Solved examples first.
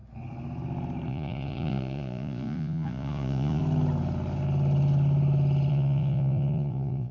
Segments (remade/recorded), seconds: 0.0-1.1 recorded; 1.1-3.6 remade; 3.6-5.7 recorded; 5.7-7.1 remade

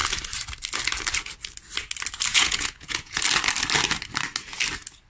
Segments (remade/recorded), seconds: 0.0-2.3 recorded; 2.3-3.2 remade; 3.2-5.1 recorded

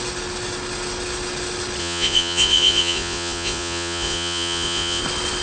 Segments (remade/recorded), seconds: 0.0-1.8 recorded; 1.8-5.0 remade; 5.0-5.4 recorded

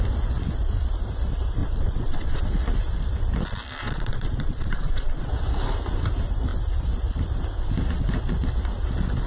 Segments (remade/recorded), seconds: 0.0-1.6 recorded; 1.6-2.4 remade; 2.4-3.8 recorded; 3.8-5.3 remade; 5.3-9.3 recorded

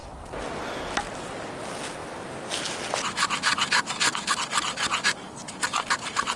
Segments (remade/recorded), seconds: 0.0-6.4 recorded